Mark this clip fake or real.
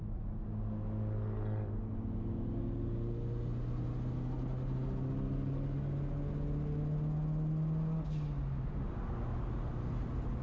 real